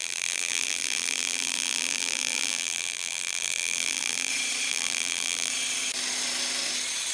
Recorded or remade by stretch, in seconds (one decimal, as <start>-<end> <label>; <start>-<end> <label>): 0.0-4.3 remade; 4.3-4.7 recorded; 4.7-5.5 remade; 5.5-7.1 recorded